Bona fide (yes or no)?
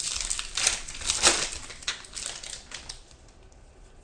yes